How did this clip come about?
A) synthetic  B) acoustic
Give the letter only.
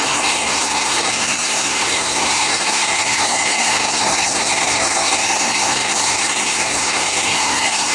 A